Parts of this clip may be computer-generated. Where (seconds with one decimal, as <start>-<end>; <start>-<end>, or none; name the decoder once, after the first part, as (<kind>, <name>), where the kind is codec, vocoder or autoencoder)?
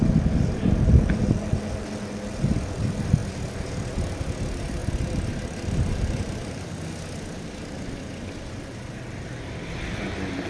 none